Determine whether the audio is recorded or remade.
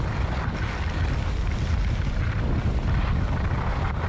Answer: recorded